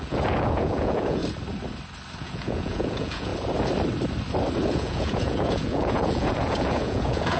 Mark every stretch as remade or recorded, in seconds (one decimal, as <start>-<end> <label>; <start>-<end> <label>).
0.0-1.2 remade; 1.2-2.2 recorded; 2.2-3.3 remade; 3.3-4.7 recorded; 4.7-7.4 remade